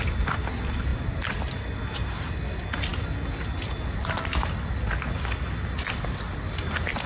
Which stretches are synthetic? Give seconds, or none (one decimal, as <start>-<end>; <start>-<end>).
none

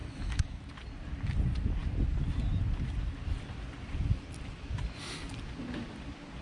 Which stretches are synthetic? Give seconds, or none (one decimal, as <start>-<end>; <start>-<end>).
0.0-0.6

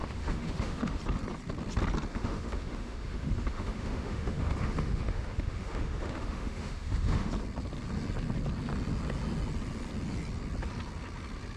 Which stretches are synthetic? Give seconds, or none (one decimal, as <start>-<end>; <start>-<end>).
0.0-1.0; 2.1-7.3

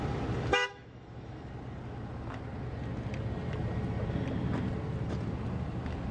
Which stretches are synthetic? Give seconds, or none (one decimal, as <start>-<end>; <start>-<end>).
0.5-1.5

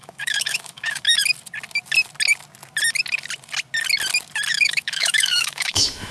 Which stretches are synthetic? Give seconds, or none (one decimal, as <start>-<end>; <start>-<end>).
0.0-1.2; 4.5-6.1

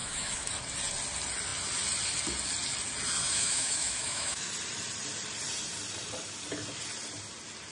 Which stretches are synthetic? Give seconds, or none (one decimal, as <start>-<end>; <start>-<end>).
0.0-0.5; 3.2-4.5